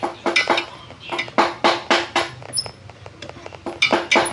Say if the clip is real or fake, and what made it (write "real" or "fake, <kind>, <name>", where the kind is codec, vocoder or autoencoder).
real